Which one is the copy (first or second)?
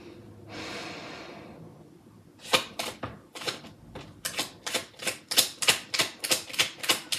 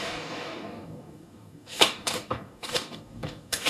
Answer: second